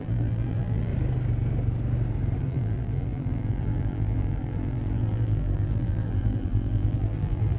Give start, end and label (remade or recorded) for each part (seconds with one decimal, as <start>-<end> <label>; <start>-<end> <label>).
0.0-0.9 remade; 0.9-2.4 recorded; 2.4-7.6 remade